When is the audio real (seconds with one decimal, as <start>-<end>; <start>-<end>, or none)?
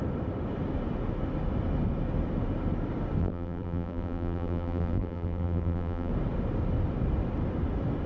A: 0.0-3.2; 6.1-8.1